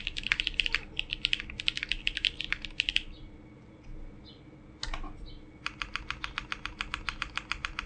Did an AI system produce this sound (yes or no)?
no